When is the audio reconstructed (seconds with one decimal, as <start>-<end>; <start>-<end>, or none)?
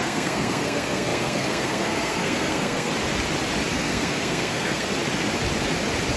0.0-2.9; 3.7-4.9